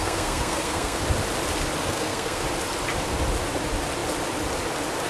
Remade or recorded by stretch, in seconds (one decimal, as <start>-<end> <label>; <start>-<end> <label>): 0.0-1.0 remade; 1.0-1.8 recorded; 1.8-2.4 remade; 2.4-5.1 recorded